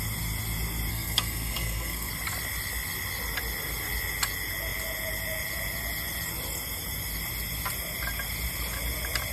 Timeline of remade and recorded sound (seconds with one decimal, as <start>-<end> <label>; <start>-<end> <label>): 0.0-0.9 recorded; 0.9-2.1 remade; 2.1-9.3 recorded